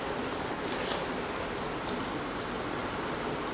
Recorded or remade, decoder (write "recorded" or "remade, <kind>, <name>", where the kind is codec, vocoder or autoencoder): recorded